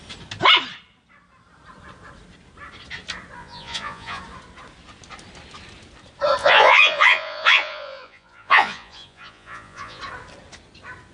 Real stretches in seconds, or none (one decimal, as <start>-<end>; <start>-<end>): 0.0-3.4; 4.2-6.4; 10.0-11.1